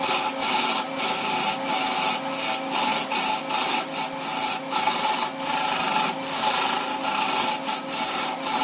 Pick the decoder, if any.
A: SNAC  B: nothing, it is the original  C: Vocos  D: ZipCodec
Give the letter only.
B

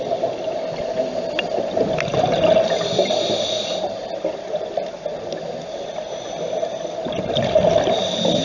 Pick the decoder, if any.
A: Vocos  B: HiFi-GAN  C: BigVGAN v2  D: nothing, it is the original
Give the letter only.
D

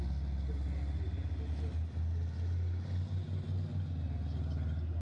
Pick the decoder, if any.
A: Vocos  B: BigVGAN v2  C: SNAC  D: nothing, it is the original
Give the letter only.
D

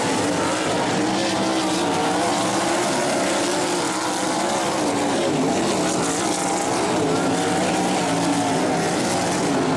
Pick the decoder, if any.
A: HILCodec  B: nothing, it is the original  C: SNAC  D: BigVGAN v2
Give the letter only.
B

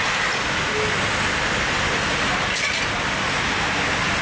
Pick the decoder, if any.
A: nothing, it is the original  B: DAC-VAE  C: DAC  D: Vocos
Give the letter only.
A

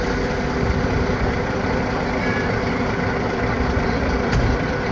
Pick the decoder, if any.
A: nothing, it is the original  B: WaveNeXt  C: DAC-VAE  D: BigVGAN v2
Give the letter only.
D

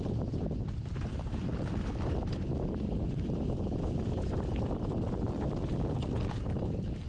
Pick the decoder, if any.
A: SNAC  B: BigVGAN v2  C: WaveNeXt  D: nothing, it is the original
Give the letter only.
B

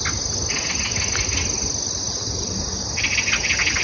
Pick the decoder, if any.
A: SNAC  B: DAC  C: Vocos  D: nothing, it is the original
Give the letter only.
D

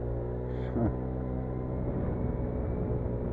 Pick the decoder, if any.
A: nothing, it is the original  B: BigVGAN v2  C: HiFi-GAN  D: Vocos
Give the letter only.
A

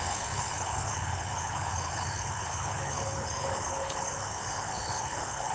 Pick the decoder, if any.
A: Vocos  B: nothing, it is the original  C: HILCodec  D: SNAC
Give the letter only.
C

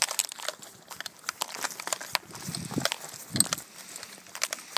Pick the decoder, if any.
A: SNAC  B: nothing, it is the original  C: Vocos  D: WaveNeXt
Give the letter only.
B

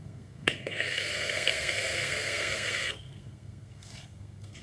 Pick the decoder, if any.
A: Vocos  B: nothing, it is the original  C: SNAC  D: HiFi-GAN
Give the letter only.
C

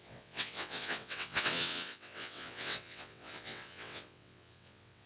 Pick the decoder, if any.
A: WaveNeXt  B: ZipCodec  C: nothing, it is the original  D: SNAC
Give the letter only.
A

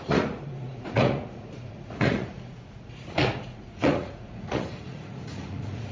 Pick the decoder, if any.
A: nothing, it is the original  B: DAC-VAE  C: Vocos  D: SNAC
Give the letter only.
C